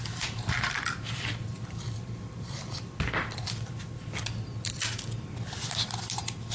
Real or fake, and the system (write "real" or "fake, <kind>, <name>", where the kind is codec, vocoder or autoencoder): real